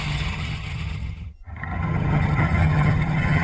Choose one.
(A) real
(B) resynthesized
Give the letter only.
B